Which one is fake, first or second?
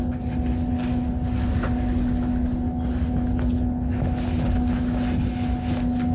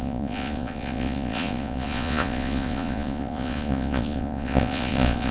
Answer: second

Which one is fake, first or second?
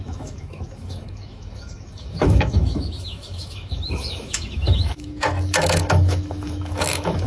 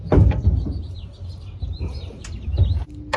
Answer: first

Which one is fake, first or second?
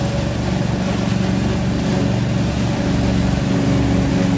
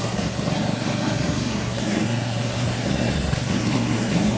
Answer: second